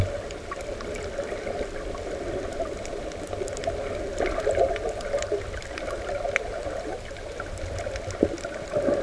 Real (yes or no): yes